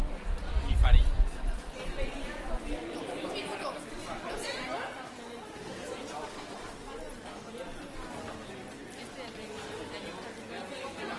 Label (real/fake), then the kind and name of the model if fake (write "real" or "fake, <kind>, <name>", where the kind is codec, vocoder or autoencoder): real